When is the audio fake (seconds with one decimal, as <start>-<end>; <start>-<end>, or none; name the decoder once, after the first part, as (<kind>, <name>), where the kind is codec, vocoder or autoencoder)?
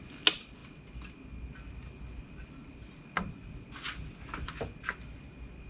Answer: none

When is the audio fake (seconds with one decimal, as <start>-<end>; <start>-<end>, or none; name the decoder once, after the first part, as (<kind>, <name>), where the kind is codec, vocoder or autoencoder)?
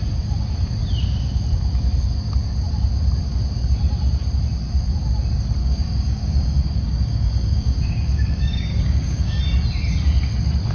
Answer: 5.6-9.4 (codec, DAC)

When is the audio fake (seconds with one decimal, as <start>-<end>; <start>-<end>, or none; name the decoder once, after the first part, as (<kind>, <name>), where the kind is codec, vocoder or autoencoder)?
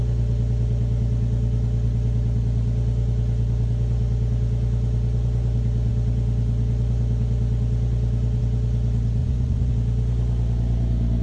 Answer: 9.2-9.7 (vocoder, Vocos)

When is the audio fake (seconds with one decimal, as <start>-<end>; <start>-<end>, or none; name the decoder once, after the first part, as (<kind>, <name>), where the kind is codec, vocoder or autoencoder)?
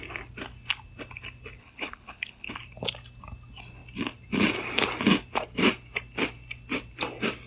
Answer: 1.6-2.5 (codec, HILCodec)